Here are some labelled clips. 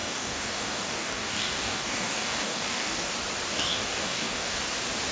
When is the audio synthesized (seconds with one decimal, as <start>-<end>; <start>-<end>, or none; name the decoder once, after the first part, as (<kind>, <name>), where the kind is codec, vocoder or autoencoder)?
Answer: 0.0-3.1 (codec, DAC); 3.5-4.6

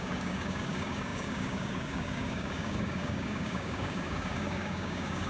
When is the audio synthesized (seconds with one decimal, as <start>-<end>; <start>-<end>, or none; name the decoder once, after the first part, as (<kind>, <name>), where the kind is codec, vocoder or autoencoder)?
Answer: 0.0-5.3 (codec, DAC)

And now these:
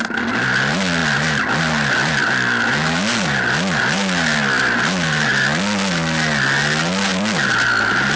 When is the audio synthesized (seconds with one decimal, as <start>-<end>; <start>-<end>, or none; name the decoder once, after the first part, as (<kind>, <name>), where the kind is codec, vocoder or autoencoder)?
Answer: none

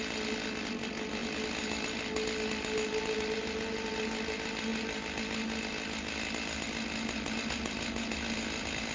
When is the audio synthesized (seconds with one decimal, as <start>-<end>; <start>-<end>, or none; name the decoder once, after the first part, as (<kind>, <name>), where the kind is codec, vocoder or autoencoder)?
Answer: none

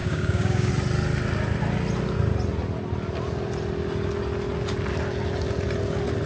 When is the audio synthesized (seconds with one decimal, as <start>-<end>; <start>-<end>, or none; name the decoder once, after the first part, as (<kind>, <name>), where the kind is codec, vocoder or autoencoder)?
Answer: 0.0-0.7 (codec, DAC)

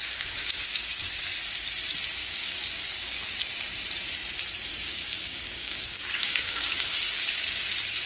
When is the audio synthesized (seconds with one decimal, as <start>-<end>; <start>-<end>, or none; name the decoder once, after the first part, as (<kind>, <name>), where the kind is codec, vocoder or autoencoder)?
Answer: 0.0-1.3 (codec, DAC); 2.2-3.4; 4.7-7.6

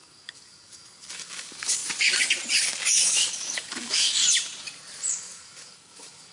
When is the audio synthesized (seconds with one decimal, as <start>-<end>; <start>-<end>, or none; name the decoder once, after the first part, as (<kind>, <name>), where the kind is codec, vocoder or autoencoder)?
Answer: 0.0-1.8 (codec, DAC); 2.6-4.2; 5.1-6.3